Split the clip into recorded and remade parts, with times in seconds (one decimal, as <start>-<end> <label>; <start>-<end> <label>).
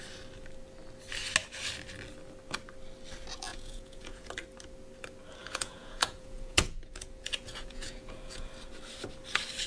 0.0-3.5 recorded; 3.5-4.3 remade; 4.3-5.4 recorded; 5.4-8.5 remade; 8.5-9.7 recorded